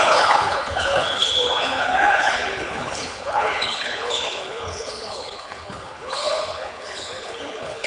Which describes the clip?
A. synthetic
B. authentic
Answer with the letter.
A